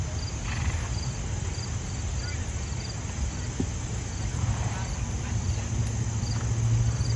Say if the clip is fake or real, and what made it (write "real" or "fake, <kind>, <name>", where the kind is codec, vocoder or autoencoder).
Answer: real